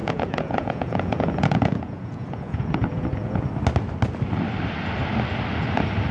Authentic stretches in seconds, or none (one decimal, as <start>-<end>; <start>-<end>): 3.5-6.1